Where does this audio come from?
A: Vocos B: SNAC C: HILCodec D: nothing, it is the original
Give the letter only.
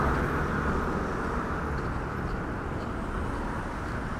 D